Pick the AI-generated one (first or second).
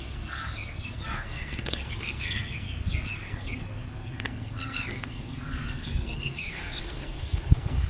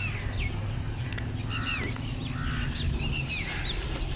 first